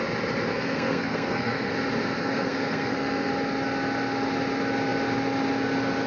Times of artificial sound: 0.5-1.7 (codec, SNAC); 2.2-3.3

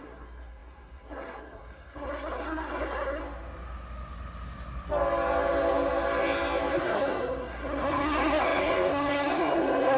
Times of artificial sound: 0.0-3.2 (codec, SNAC); 6.7-10.0

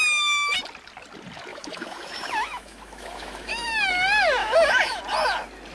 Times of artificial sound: 1.5-3.9 (autoencoder, DAC-VAE); 4.4-5.0

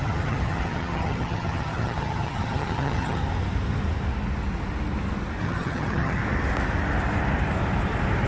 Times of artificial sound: 0.0-3.2 (vocoder, HiFi-GAN); 5.4-6.2

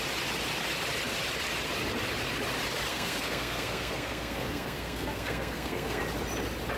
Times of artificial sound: 2.9-6.0 (codec, SNAC)

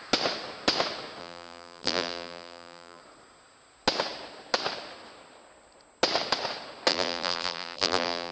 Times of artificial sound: 1.2-3.0 (vocoder, BigVGAN v2); 6.9-8.3